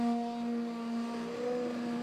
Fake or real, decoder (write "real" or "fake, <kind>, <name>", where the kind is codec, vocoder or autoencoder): real